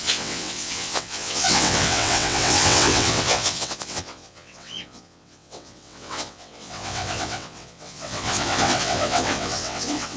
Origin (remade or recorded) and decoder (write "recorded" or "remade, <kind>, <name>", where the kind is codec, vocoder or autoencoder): remade, vocoder, WaveNeXt